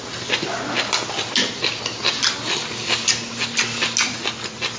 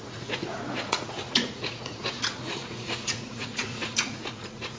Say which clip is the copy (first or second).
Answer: second